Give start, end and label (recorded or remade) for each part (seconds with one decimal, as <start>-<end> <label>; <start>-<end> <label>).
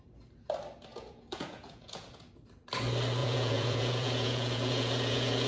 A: 0.0-0.9 recorded; 0.9-2.3 remade; 2.3-3.2 recorded; 3.2-5.5 remade